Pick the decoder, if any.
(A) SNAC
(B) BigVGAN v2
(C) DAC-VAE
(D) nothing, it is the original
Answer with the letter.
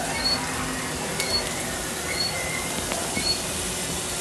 D